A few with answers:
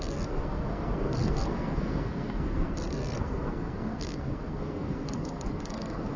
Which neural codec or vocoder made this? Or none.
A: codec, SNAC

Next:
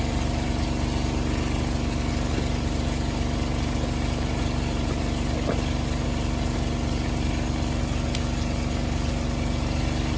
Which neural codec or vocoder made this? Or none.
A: none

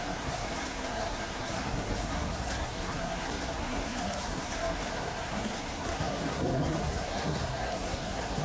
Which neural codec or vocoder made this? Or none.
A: codec, SNAC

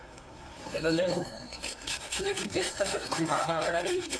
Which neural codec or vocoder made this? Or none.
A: codec, SNAC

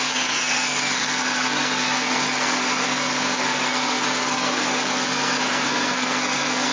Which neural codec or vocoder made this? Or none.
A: codec, SNAC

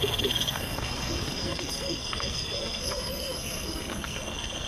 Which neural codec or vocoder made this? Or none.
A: codec, SNAC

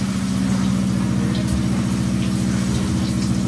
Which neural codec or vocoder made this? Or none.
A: none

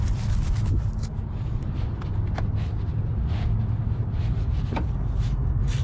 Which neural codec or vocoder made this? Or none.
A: none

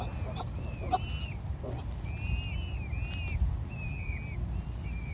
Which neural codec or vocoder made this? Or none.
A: none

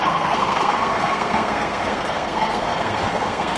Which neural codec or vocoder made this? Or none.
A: codec, SNAC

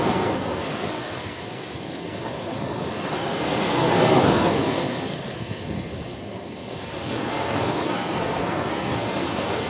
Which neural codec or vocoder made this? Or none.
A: codec, SNAC